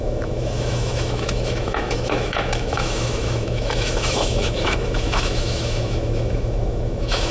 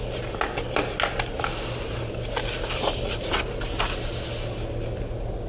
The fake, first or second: first